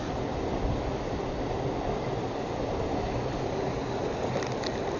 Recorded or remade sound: recorded